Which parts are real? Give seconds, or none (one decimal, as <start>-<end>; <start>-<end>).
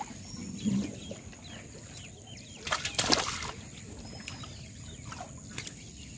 0.0-6.2